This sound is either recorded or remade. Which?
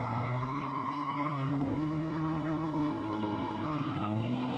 remade